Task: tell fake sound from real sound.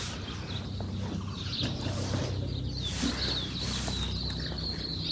real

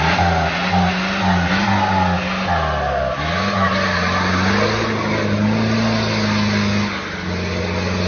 real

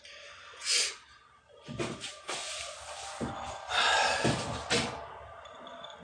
real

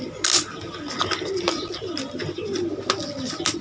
real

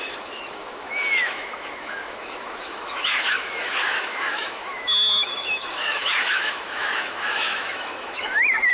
fake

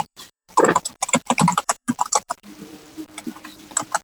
fake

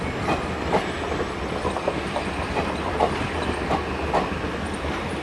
real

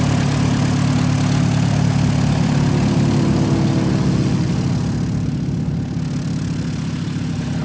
real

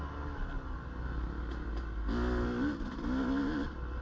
real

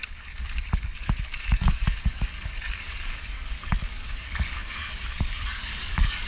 fake